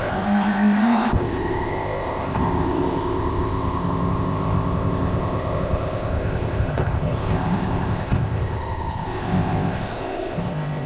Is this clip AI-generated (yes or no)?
yes